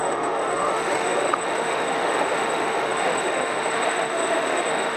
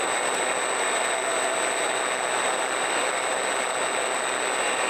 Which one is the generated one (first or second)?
first